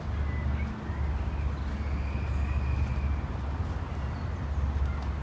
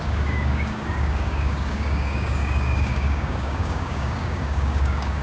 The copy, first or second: second